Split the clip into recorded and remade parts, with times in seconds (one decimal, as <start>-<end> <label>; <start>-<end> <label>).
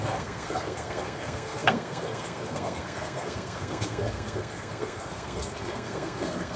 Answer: 0.0-6.6 remade